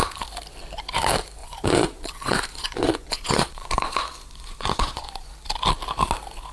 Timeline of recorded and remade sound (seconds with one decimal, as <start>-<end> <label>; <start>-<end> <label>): 0.0-1.4 recorded; 1.4-5.3 remade; 5.3-6.5 recorded